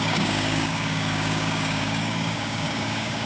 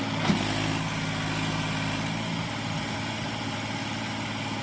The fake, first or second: first